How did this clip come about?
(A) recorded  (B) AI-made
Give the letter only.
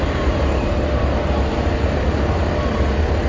A